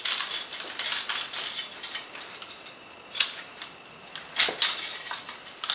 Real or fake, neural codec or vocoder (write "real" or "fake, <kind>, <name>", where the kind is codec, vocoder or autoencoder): real